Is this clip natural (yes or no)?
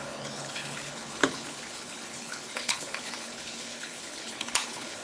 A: no